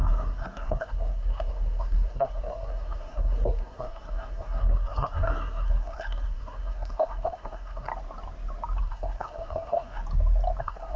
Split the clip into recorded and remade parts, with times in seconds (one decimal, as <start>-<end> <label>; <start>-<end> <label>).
0.0-7.9 remade; 7.9-8.8 recorded; 8.8-10.0 remade; 10.0-10.6 recorded; 10.6-11.0 remade